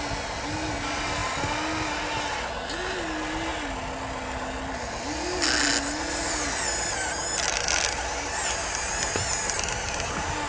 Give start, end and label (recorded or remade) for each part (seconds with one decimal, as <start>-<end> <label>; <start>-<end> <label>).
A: 0.0-10.5 recorded